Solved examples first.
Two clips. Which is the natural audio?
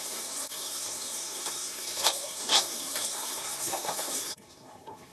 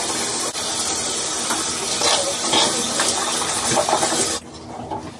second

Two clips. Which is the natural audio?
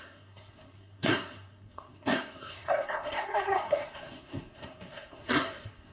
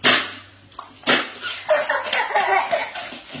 second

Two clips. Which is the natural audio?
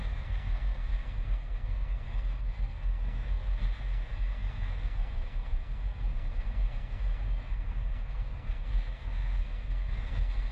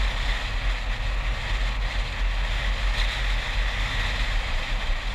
second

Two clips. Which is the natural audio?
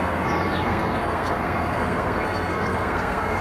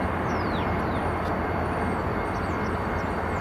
second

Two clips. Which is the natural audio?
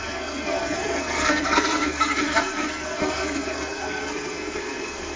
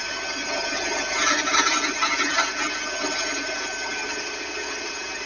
second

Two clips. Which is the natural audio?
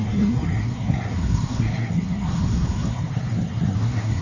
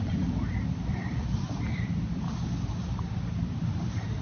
second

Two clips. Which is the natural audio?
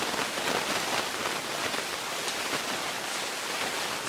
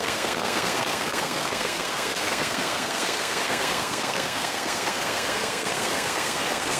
first